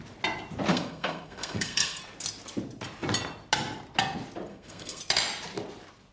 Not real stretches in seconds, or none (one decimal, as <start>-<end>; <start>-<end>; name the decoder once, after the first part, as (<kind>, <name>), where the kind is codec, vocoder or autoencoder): 0.7-2.0 (codec, SNAC); 4.5-5.0